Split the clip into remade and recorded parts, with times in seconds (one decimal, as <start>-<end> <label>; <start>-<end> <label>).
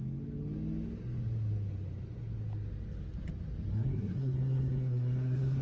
0.0-3.7 recorded; 3.7-5.6 remade